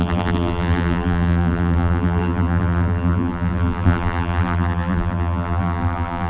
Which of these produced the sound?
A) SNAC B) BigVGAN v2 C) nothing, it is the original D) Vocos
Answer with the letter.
B